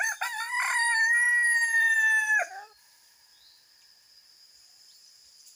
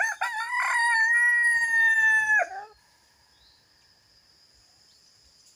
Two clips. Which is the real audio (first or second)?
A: second